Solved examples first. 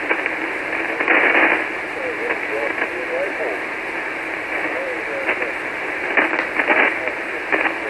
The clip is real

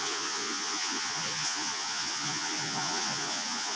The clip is fake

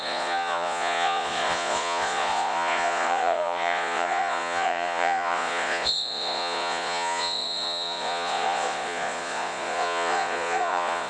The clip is fake